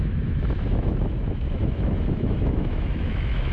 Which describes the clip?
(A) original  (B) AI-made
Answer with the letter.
B